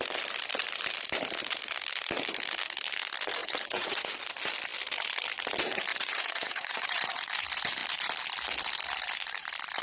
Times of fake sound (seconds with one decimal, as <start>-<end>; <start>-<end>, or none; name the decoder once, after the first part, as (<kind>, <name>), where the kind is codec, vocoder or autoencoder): 3.4-4.1 (vocoder, Vocos); 5.9-7.3